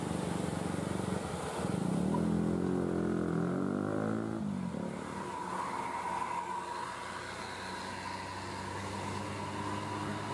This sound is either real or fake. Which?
real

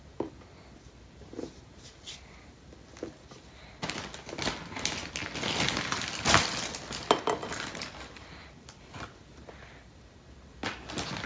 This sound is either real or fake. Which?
real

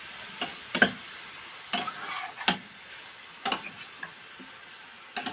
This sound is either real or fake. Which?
real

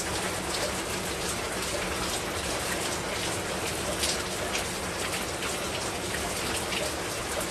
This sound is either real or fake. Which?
real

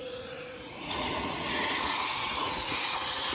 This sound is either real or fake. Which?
fake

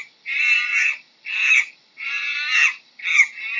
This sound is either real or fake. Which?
real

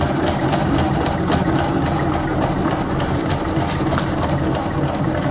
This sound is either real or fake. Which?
real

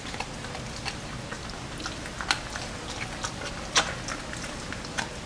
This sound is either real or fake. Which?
real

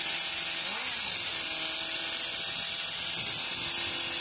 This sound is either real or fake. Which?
real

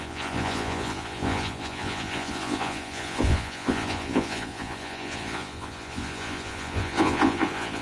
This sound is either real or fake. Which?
fake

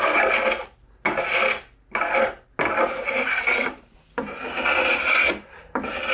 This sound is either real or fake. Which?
real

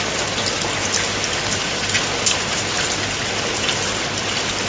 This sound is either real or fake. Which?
real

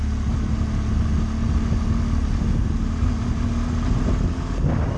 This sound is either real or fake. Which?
real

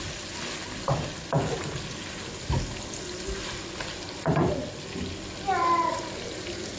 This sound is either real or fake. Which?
real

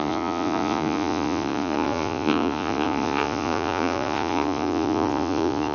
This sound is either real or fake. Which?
fake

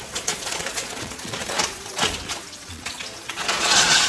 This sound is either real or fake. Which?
fake